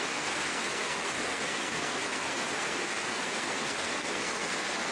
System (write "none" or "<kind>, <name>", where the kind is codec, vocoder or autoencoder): codec, SNAC